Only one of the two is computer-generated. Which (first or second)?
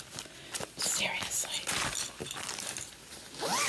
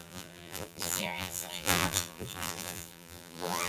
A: second